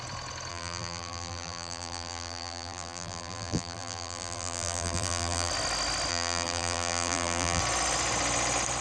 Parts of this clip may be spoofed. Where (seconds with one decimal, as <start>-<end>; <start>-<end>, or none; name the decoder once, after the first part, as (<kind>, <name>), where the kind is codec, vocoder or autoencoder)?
0.5-5.5 (vocoder, BigVGAN v2); 6.1-7.6